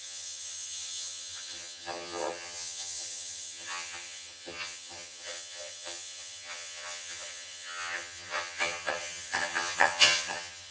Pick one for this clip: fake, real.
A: fake